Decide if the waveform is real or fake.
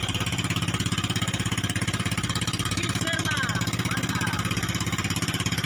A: real